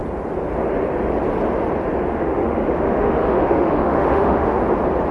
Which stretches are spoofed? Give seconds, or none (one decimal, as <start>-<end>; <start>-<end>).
2.1-4.6